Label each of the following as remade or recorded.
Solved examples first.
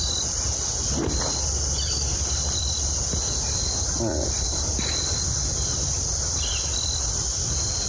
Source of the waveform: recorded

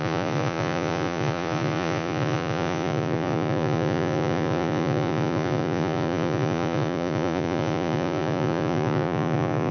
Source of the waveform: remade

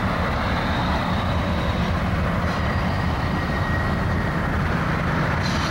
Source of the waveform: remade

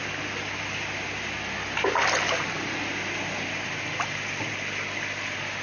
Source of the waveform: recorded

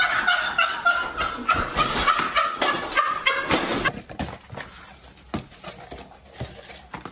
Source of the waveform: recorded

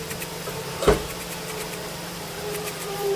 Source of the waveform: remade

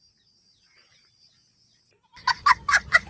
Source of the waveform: recorded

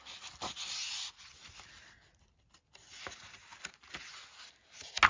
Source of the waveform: recorded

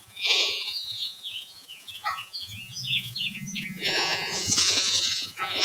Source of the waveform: remade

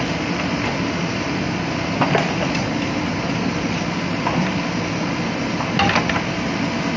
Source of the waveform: recorded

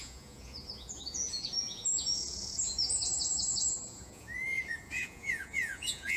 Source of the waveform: remade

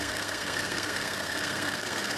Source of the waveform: remade